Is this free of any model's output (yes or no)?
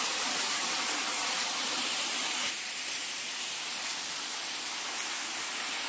yes